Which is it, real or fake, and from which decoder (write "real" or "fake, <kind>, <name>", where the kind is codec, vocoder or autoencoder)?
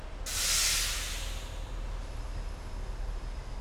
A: real